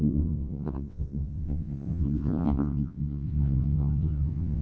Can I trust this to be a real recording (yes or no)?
no